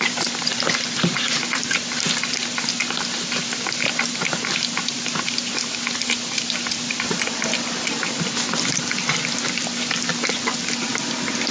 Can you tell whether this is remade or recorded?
recorded